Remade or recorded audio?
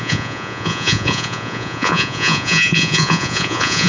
remade